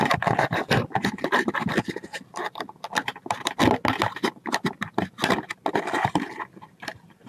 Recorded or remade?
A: recorded